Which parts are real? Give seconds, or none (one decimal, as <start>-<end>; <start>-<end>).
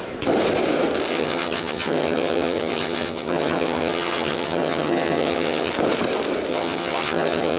0.0-1.1; 5.7-6.5